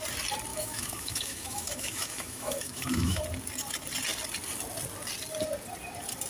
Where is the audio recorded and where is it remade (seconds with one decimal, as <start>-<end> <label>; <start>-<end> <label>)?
0.0-0.5 recorded; 0.5-3.2 remade; 3.2-6.3 recorded